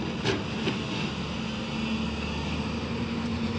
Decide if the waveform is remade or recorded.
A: recorded